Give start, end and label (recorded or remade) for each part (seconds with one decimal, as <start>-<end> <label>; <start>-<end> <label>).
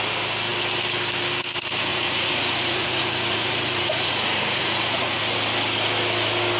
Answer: 0.0-1.9 recorded; 1.9-5.2 remade; 5.2-6.6 recorded